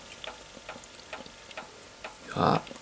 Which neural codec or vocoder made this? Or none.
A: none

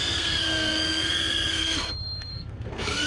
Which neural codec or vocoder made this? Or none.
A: codec, SNAC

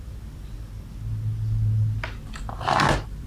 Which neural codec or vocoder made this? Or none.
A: none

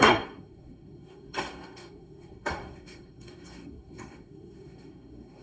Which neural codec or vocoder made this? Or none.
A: codec, SNAC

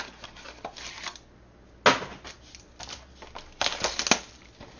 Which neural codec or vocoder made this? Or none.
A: none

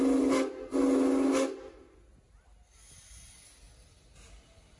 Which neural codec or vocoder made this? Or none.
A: none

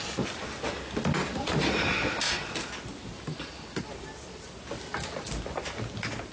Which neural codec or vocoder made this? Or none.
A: none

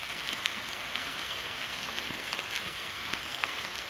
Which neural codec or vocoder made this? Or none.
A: codec, SNAC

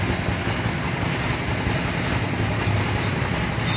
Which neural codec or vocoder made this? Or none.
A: none